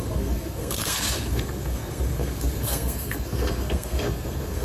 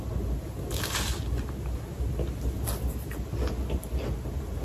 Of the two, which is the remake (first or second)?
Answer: first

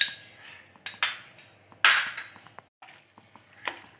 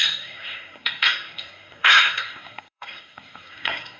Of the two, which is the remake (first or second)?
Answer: second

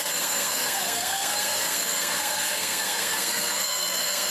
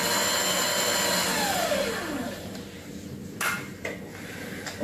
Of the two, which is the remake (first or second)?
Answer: first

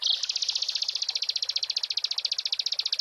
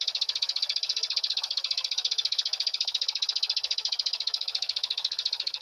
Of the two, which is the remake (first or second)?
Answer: second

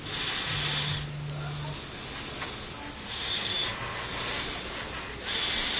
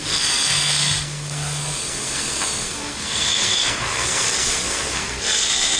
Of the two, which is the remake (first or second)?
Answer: second